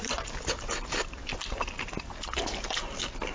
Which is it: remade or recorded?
recorded